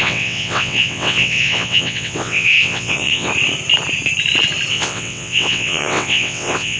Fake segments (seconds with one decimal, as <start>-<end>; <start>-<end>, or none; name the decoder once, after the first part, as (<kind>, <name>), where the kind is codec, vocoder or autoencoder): 0.0-3.3 (vocoder, WaveNeXt); 4.7-6.8